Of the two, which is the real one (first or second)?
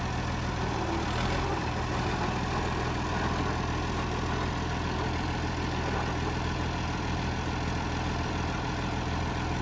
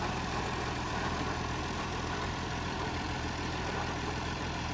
first